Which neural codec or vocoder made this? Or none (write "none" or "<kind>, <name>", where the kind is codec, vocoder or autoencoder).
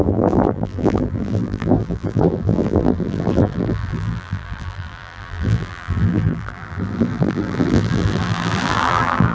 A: vocoder, BigVGAN v2